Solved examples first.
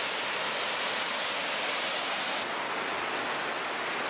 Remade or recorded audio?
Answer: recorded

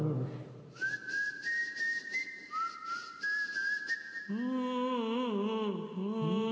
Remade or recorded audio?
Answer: recorded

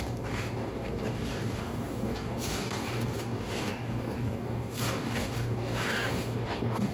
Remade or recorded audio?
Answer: remade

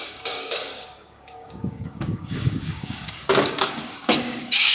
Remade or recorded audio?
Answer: remade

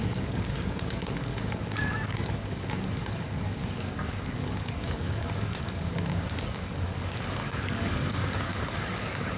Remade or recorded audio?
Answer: remade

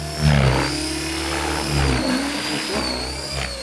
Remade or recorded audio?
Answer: recorded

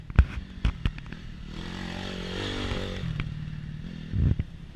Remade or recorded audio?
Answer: recorded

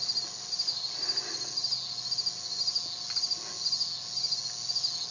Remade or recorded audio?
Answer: recorded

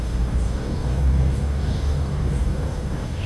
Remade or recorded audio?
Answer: remade